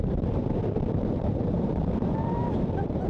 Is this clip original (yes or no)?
no